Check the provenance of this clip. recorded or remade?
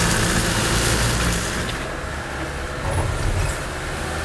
recorded